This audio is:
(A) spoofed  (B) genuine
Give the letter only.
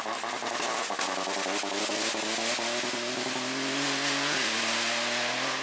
B